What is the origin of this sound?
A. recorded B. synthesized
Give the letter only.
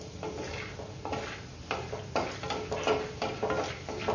A